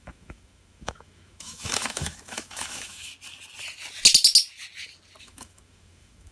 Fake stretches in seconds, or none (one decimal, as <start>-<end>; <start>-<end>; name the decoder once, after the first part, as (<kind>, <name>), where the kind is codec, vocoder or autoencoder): 0.0-3.1 (autoencoder, DAC-VAE); 5.2-6.3